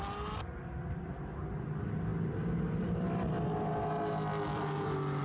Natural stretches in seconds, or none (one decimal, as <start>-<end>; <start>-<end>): 0.0-5.2

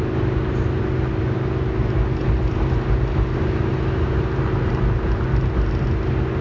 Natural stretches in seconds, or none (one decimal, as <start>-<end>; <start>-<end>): 0.0-6.4

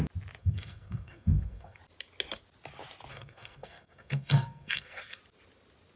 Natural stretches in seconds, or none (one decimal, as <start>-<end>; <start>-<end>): 0.0-0.4; 1.8-3.1; 5.2-6.0

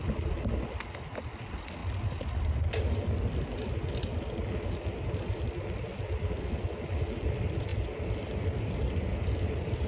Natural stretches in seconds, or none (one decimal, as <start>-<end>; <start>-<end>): 0.0-9.9

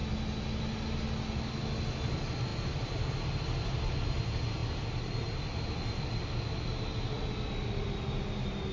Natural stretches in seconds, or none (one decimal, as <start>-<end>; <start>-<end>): 0.0-8.7